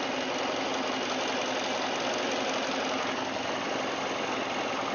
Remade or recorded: recorded